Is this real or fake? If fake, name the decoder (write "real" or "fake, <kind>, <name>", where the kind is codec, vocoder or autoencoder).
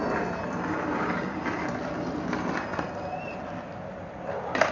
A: real